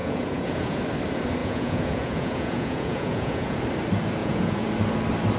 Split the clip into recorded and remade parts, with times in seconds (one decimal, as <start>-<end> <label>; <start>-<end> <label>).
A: 0.0-0.8 remade; 0.8-1.4 recorded; 1.4-3.6 remade; 3.6-4.2 recorded; 4.2-4.7 remade; 4.7-5.4 recorded